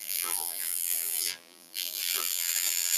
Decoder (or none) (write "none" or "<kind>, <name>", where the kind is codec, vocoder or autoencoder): vocoder, BigVGAN v2